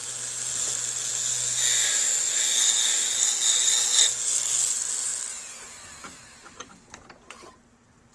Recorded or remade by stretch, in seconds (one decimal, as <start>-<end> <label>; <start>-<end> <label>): 0.0-8.1 recorded